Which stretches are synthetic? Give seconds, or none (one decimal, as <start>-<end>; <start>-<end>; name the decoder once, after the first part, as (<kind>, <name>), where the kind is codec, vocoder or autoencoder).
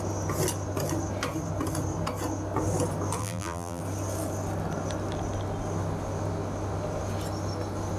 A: 3.2-3.8 (vocoder, BigVGAN v2)